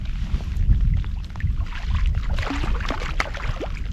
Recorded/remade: recorded